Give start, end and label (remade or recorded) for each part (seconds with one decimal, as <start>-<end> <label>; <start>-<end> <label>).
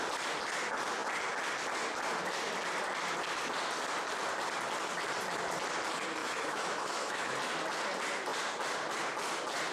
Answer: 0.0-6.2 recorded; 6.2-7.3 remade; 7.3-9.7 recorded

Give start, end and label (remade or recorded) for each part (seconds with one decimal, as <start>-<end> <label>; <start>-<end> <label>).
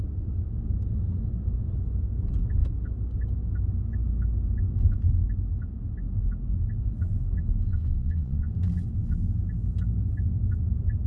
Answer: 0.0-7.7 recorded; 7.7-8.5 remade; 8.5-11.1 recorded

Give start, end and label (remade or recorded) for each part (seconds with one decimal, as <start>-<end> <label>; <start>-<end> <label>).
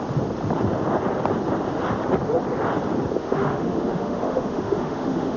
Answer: 0.0-3.2 recorded; 3.2-5.4 remade